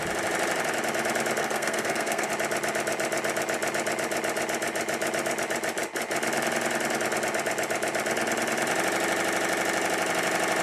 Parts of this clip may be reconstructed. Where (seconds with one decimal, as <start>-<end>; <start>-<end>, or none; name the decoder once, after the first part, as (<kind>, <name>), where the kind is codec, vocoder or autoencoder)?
1.4-2.3 (codec, SNAC)